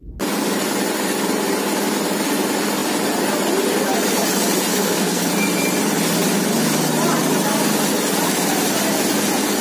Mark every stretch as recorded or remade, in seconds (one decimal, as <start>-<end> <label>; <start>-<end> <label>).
0.0-4.7 recorded; 4.7-5.3 remade; 5.3-9.6 recorded